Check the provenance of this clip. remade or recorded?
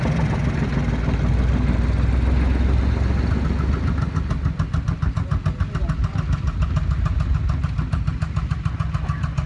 recorded